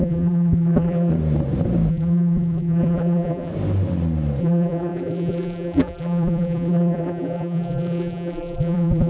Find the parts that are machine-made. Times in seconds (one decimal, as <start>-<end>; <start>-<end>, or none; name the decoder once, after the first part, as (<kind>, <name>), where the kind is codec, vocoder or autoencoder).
0.0-1.1 (vocoder, BigVGAN v2); 1.9-3.5; 4.4-9.1